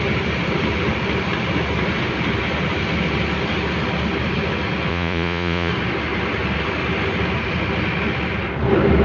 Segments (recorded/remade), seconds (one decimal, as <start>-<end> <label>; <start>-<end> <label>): 0.0-4.9 recorded; 4.9-5.7 remade; 5.7-9.0 recorded